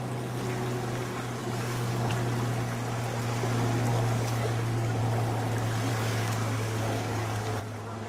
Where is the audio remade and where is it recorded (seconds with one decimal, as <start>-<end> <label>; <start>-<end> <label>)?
0.0-1.4 recorded; 1.4-2.1 remade; 2.1-3.9 recorded; 3.9-5.0 remade; 5.0-5.9 recorded; 5.9-7.6 remade; 7.6-8.1 recorded